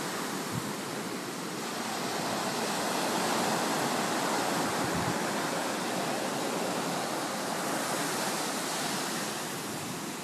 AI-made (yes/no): no